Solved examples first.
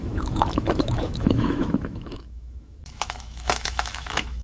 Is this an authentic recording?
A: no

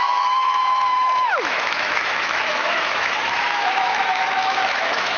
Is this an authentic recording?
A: no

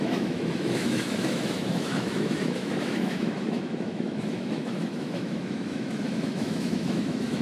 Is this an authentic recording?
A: no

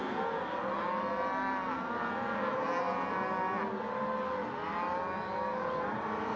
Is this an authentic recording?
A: yes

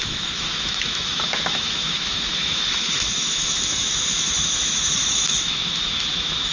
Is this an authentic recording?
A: no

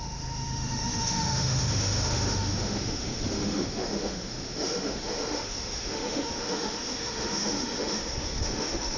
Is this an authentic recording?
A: no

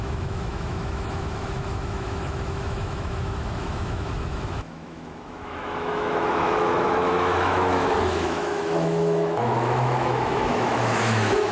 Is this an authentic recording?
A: no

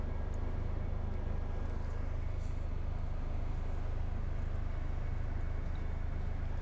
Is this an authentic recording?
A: yes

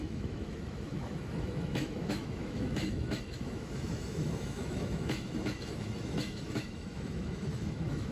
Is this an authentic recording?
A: no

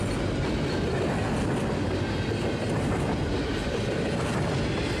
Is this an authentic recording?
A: yes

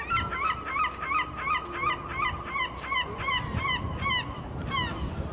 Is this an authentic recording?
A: yes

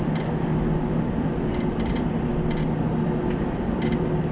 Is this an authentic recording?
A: yes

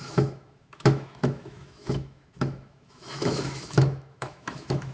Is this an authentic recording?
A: no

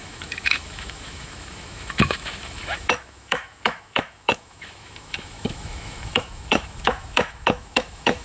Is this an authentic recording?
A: no